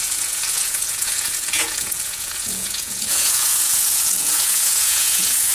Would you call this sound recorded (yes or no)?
no